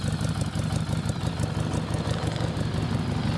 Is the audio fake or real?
real